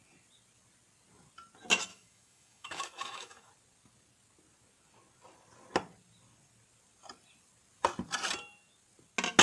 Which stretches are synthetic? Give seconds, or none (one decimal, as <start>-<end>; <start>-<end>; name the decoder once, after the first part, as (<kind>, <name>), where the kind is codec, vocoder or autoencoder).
1.9-3.5 (autoencoder, DAC-VAE)